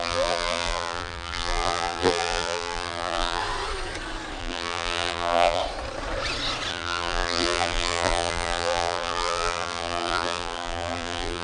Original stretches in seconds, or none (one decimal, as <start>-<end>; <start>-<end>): 3.4-4.4; 5.6-6.7